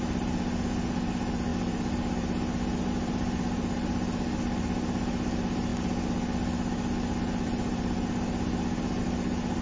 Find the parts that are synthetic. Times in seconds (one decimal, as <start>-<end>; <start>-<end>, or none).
none